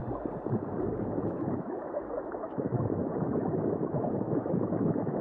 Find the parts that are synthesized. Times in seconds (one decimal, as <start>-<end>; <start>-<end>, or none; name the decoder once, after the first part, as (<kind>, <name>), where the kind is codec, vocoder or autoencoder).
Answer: 0.9-5.2 (autoencoder, DAC-VAE)